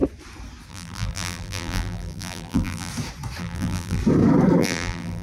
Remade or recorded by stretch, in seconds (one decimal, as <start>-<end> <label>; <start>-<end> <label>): 0.0-0.7 recorded; 0.7-2.9 remade; 2.9-3.4 recorded; 3.4-4.0 remade; 4.0-4.6 recorded; 4.6-5.2 remade